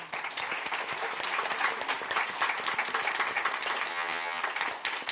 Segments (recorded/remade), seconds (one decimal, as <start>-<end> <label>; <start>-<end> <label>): 0.0-3.9 recorded; 3.9-4.4 remade; 4.4-5.1 recorded